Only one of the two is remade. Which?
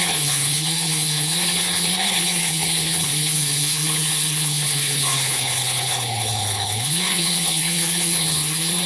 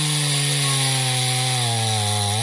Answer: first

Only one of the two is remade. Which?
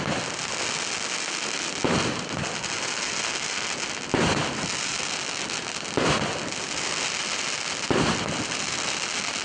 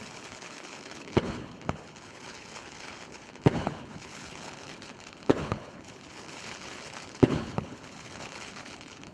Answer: second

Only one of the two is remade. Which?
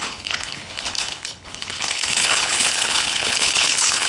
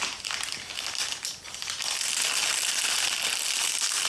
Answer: first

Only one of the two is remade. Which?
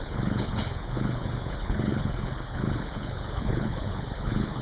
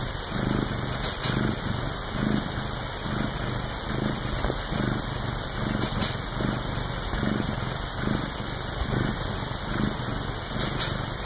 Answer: first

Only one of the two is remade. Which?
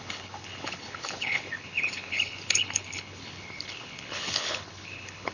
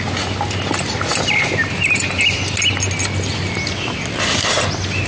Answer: first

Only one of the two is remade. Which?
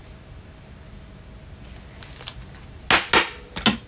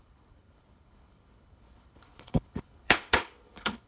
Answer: second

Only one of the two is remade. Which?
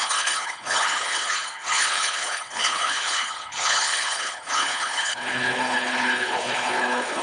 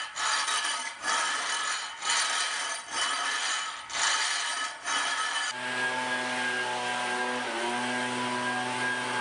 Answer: first